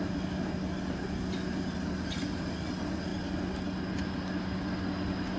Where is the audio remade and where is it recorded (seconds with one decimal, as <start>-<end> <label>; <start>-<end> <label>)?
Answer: 0.0-5.4 recorded